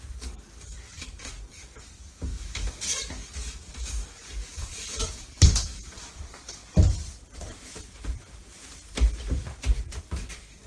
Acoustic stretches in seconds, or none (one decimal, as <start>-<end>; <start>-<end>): 6.6-10.0